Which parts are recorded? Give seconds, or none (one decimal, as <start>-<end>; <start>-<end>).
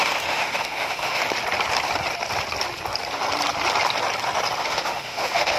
1.2-4.6